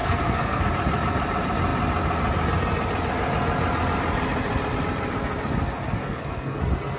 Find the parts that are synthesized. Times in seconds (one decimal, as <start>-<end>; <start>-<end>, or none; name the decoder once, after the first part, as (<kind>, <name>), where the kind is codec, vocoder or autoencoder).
0.0-0.6 (codec, SNAC); 6.0-6.6